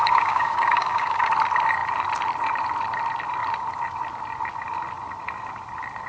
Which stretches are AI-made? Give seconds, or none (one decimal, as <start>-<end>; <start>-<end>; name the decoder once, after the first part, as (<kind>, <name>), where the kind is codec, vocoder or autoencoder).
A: 0.0-1.3 (codec, DAC)